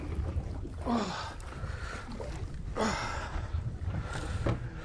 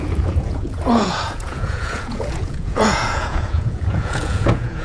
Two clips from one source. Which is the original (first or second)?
first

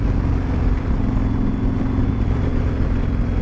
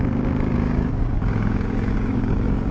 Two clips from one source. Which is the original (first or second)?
first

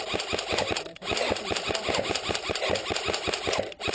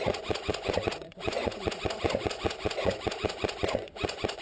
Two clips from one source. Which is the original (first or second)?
first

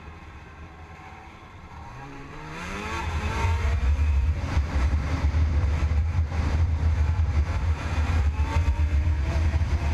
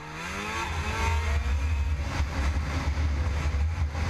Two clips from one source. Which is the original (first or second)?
second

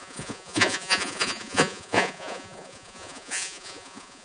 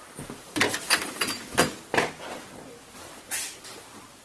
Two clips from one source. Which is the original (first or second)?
second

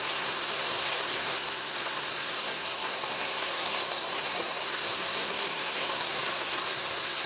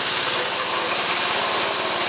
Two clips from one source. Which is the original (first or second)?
second